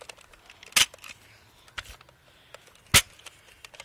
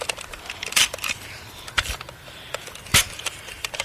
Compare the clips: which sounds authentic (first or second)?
first